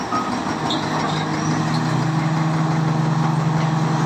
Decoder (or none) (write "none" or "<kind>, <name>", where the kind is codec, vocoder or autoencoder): none